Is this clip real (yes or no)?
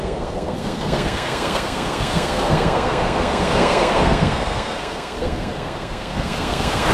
no